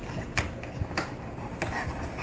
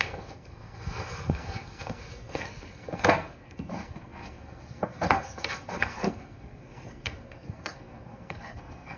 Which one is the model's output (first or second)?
second